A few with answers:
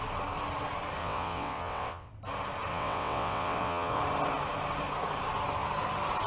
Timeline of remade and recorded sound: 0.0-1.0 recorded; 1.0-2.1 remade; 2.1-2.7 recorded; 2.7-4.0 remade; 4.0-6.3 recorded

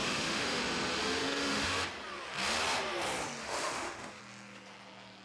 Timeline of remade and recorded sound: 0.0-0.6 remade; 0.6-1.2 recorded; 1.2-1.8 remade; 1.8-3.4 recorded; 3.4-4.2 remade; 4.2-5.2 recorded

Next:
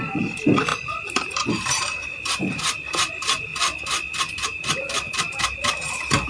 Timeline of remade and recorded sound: 0.0-3.5 remade; 3.5-4.3 recorded; 4.3-6.3 remade

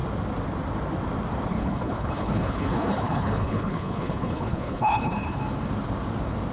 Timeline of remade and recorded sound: 0.0-1.5 recorded; 1.5-5.4 remade; 5.4-6.5 recorded

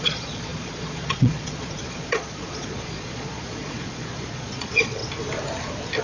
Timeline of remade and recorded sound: 0.0-5.0 remade; 5.0-6.0 recorded